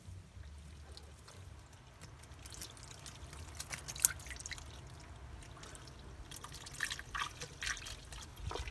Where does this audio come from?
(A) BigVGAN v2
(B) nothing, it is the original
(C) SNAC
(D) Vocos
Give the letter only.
B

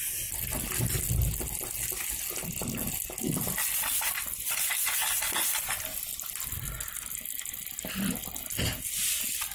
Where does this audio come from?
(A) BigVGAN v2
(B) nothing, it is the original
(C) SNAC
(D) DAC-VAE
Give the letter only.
B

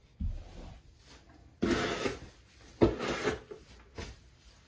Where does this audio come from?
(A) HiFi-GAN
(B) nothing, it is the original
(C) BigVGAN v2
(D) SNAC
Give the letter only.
B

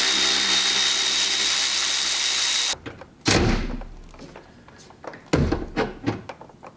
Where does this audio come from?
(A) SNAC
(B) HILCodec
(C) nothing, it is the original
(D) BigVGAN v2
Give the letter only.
C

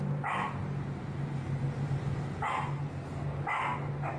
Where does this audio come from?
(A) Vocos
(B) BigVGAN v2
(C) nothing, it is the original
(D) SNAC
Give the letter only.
C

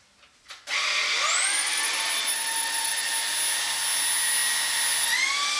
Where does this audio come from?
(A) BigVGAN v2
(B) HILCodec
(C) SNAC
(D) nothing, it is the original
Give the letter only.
D